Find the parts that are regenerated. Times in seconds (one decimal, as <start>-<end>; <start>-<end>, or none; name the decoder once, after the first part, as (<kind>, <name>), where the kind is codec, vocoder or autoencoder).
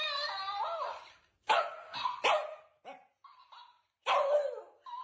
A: 0.0-0.6 (vocoder, BigVGAN v2); 4.0-4.6